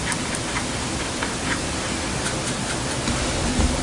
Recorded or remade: recorded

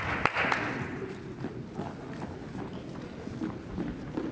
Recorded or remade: recorded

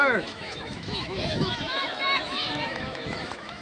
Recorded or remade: remade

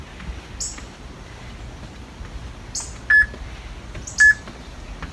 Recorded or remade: recorded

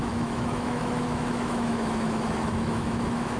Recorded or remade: remade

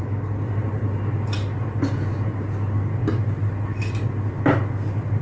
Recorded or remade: recorded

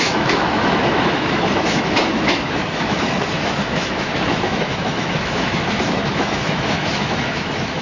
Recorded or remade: remade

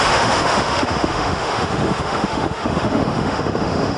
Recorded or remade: remade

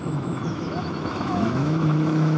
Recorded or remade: remade